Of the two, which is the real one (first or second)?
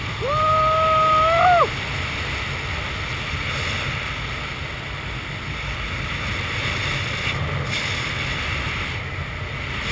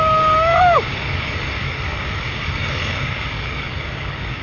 first